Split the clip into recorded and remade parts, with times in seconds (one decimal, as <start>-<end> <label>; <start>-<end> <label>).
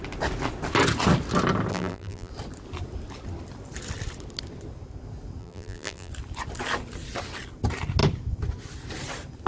0.0-1.7 recorded; 1.7-2.3 remade; 2.3-5.4 recorded; 5.4-6.1 remade; 6.1-9.5 recorded